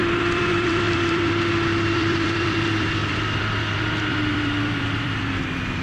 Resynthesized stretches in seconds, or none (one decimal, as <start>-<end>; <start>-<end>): 0.0-5.8